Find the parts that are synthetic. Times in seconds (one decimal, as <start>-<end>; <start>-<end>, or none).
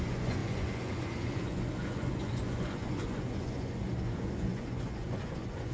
0.0-5.7